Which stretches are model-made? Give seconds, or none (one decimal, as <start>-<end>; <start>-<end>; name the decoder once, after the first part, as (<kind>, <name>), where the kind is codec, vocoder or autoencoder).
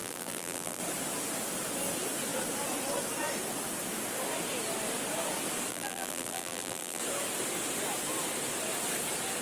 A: 0.0-0.8 (vocoder, BigVGAN v2); 5.7-7.0